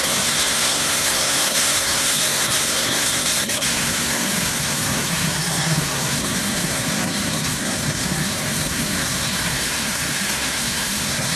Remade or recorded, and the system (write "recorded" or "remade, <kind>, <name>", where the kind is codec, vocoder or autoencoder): remade, codec, SNAC